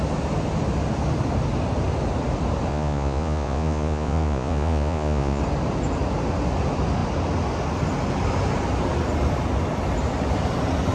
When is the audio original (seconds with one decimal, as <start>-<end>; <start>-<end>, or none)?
0.0-2.7; 5.4-10.9